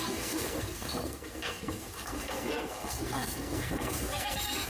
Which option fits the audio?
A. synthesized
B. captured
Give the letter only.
A